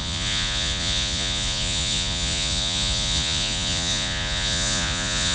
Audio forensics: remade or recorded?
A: remade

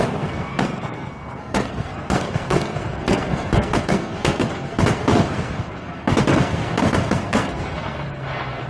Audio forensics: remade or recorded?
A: remade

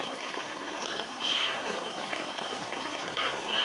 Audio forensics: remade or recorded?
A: remade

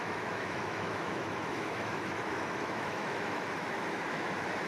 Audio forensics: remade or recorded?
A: remade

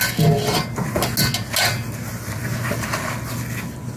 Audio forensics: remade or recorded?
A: recorded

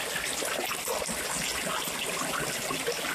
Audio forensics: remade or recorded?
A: recorded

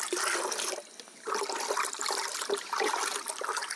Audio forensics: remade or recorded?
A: recorded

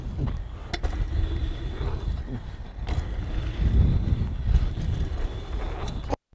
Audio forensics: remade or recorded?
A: recorded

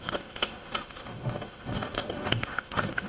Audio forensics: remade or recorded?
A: remade